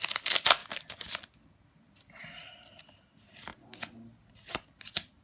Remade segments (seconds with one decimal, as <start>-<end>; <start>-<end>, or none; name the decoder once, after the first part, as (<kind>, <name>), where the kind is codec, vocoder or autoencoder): 0.6-1.2 (vocoder, BigVGAN v2)